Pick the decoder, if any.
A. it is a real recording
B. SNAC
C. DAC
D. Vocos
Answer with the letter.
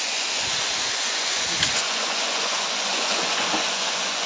D